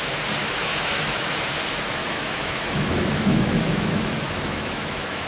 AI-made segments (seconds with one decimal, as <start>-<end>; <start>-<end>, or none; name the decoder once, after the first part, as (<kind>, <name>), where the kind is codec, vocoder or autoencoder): 0.4-1.3 (autoencoder, DAC-VAE); 2.0-5.3